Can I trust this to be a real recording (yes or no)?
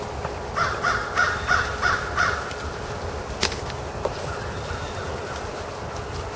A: yes